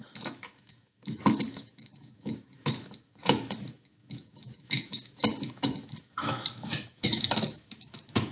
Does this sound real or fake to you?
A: fake